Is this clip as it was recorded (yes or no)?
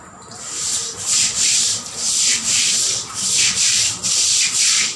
no